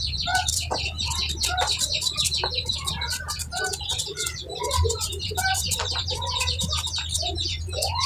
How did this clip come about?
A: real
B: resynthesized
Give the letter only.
A